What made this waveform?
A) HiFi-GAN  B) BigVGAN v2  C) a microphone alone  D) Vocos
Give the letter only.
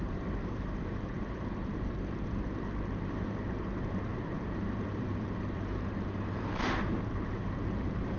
B